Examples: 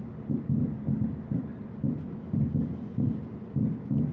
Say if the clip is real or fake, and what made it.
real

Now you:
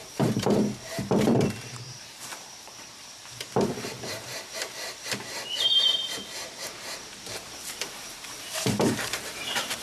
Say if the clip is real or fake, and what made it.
fake, vocoder, BigVGAN v2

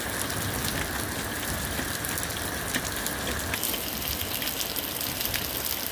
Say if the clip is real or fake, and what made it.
real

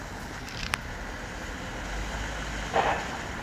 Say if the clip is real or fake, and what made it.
real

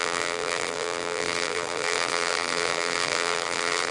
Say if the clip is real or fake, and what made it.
fake, vocoder, BigVGAN v2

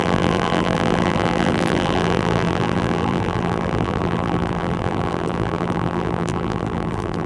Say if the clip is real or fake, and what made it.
fake, vocoder, BigVGAN v2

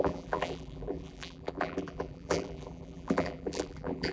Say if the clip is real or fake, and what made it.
fake, vocoder, BigVGAN v2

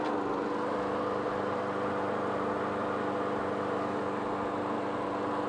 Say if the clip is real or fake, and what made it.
real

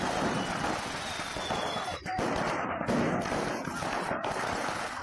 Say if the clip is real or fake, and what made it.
real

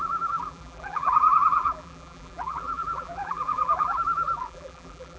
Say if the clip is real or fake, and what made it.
fake, vocoder, BigVGAN v2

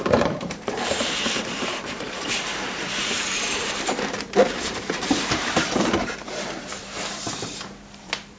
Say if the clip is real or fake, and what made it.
fake, vocoder, BigVGAN v2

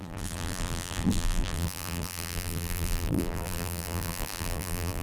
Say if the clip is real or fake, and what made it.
fake, vocoder, BigVGAN v2